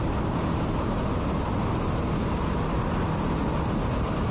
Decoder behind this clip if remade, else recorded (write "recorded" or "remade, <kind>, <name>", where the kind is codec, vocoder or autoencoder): recorded